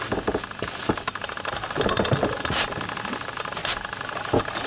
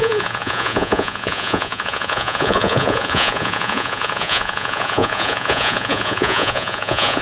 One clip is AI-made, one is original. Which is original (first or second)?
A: first